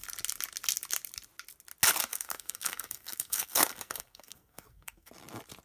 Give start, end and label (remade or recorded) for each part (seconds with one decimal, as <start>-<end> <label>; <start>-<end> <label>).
0.0-2.1 recorded; 2.1-5.1 remade; 5.1-5.6 recorded